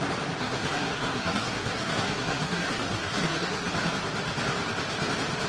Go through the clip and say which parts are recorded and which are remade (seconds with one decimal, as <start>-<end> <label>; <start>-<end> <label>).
0.0-0.4 recorded; 0.4-3.7 remade; 3.7-5.5 recorded